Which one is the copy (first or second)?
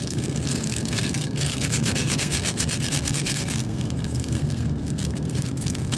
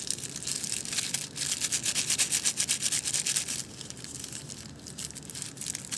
first